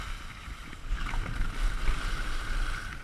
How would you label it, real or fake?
real